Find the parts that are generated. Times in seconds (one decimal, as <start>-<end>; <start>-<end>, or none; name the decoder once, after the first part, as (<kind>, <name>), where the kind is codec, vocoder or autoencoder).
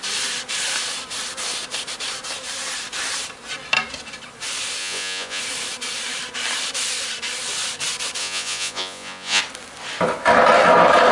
4.8-5.4 (vocoder, Vocos); 8.2-9.4